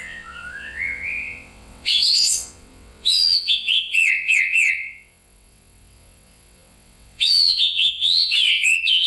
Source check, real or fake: fake